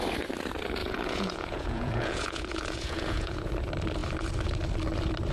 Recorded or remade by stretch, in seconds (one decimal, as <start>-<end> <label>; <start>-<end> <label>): 0.0-0.8 recorded; 0.8-3.5 remade; 3.5-5.3 recorded